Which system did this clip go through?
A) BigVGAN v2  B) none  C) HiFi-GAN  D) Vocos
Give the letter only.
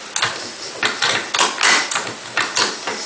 B